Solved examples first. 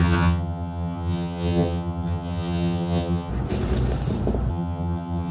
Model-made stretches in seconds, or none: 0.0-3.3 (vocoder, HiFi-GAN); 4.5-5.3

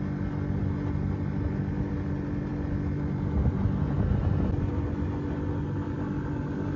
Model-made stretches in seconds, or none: none

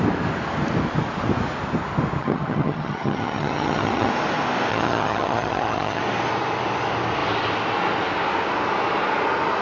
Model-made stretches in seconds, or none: 2.2-4.1 (vocoder, HiFi-GAN); 4.7-6.0

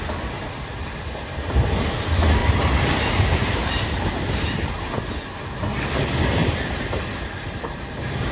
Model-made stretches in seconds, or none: 2.4-5.0 (vocoder, BigVGAN v2); 6.4-7.0

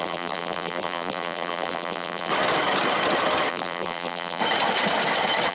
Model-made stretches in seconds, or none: 0.0-2.3 (vocoder, BigVGAN v2); 3.5-4.4

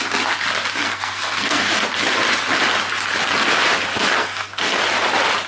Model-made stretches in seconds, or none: 0.8-1.8 (codec, SNAC); 4.2-4.8